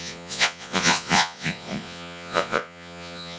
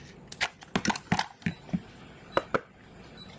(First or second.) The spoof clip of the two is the first